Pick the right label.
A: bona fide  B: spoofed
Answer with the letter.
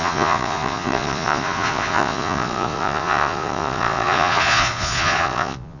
B